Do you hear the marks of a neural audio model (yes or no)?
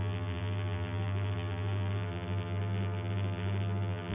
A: yes